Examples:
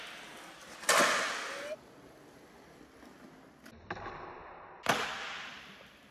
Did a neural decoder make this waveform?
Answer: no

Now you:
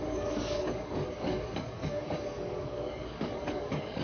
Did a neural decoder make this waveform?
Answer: yes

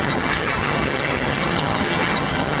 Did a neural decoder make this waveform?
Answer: yes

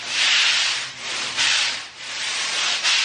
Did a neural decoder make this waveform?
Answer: yes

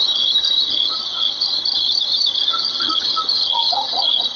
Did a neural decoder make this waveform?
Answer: yes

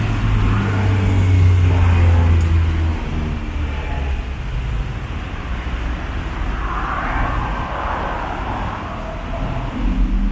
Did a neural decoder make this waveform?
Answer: no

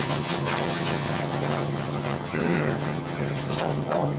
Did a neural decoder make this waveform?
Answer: yes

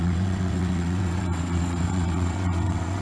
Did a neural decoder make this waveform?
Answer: yes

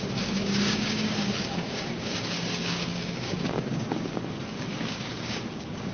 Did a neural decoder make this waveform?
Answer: yes